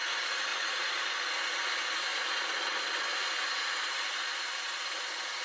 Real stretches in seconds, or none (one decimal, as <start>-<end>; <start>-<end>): 0.0-0.5; 1.0-2.1; 2.8-3.6; 4.2-5.4